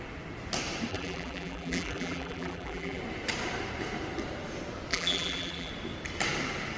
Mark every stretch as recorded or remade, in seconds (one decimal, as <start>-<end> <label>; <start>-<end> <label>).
0.0-0.9 recorded; 0.9-3.0 remade; 3.0-4.9 recorded; 4.9-5.7 remade; 5.7-6.8 recorded